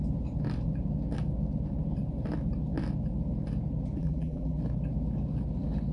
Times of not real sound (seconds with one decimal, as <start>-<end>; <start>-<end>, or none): 4.0-4.6